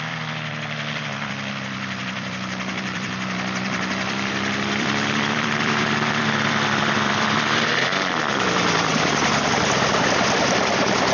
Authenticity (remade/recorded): remade